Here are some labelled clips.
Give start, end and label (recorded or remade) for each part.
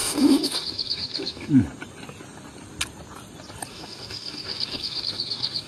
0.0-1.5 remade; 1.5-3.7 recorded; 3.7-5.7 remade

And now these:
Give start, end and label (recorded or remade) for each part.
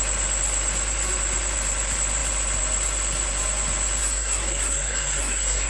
0.0-4.0 recorded; 4.0-5.7 remade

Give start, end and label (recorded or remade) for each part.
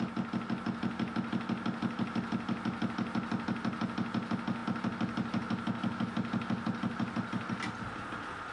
0.0-8.5 recorded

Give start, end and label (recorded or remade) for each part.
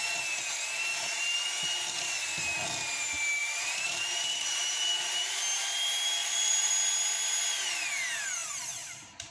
0.0-3.4 recorded; 3.4-5.4 remade; 5.4-6.2 recorded; 6.2-6.7 remade; 6.7-8.4 recorded; 8.4-9.3 remade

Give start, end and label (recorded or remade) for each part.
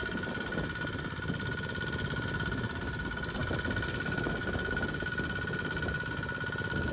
0.0-6.9 recorded